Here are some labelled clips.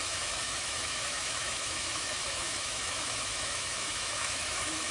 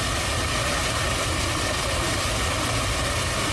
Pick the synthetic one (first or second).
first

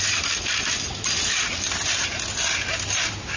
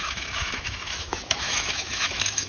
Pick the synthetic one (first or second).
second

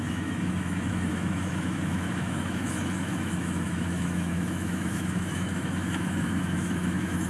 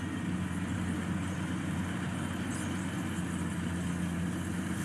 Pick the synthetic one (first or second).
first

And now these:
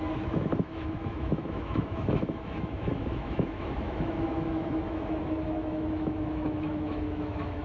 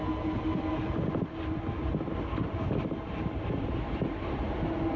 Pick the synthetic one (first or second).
first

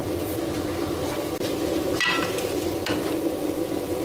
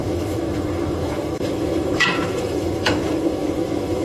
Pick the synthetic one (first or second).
second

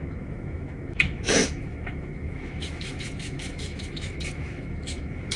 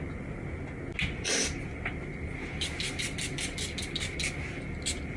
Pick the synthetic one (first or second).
first